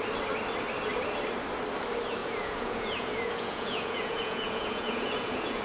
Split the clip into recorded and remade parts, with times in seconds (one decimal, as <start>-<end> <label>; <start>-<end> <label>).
0.0-2.2 recorded; 2.2-5.6 remade